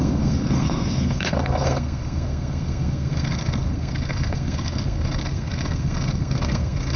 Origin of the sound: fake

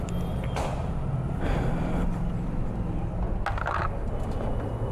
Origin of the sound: real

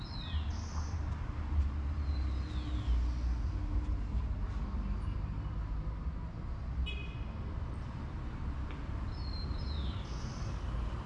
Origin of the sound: real